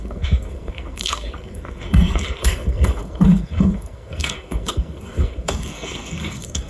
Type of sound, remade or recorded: remade